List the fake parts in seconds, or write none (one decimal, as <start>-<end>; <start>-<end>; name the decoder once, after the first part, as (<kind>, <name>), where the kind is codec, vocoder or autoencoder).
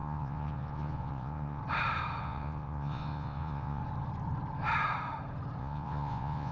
0.0-1.6 (vocoder, Vocos); 2.2-3.8; 5.6-6.5